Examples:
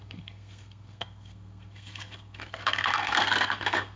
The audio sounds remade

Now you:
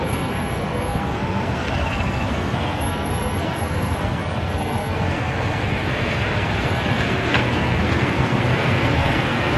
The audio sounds remade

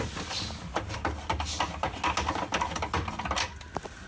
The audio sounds recorded